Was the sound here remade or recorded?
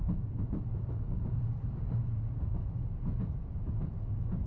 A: remade